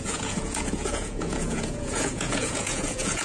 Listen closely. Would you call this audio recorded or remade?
remade